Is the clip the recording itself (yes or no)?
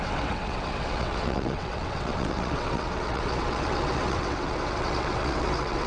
no